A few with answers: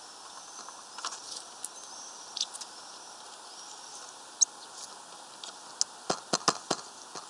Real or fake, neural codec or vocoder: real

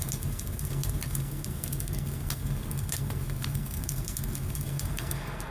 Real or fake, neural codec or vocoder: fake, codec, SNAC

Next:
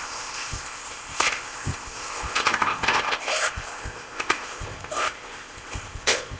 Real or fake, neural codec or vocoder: fake, codec, ZipCodec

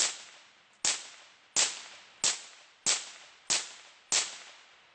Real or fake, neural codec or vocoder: real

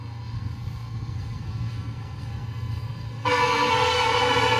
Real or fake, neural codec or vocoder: fake, codec, SNAC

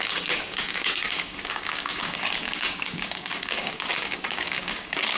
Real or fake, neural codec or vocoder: fake, codec, DAC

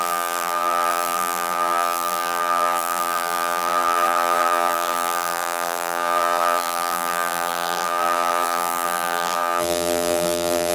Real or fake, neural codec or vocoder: fake, vocoder, BigVGAN v2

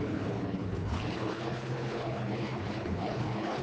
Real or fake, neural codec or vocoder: fake, codec, HILCodec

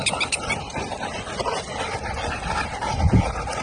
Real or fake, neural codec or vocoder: real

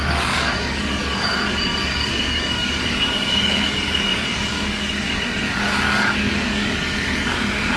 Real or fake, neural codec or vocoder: fake, codec, DAC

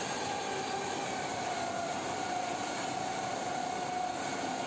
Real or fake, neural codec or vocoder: real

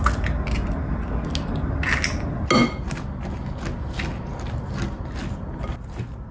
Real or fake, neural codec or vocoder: real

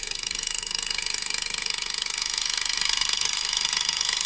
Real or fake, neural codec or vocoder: fake, codec, SNAC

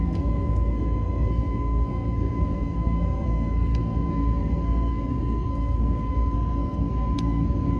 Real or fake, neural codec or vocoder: fake, codec, SNAC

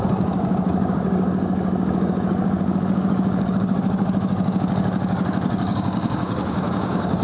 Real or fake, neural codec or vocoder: fake, codec, DAC